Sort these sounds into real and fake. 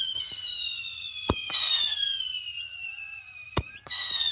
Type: fake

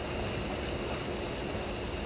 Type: real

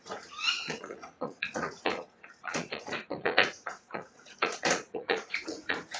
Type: fake